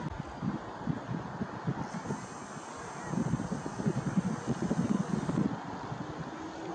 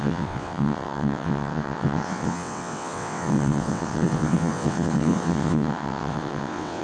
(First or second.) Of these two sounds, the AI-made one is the second